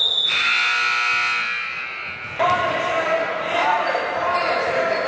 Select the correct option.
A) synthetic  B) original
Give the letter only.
B